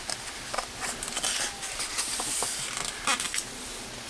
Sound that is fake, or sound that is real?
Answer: real